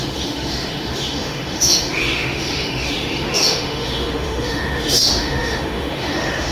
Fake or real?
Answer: fake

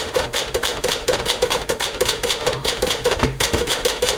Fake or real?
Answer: fake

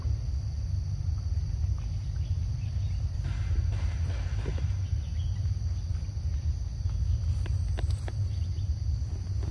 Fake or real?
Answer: real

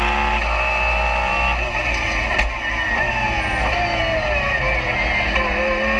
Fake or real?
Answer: real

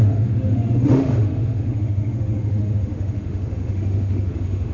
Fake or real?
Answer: fake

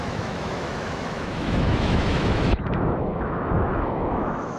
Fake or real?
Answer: fake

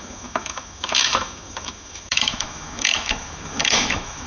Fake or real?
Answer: fake